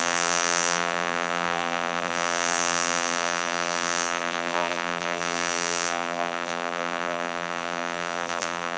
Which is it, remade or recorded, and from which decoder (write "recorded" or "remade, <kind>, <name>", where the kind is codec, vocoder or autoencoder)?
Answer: remade, vocoder, BigVGAN v2